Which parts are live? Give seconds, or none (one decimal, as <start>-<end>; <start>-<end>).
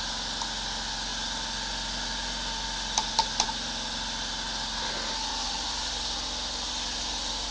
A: 0.0-7.5